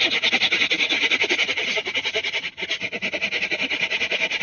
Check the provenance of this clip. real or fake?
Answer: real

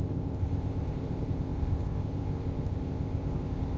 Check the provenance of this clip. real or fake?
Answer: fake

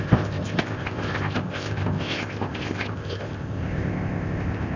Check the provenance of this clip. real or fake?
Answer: fake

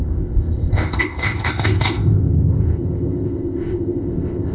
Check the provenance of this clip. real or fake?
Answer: fake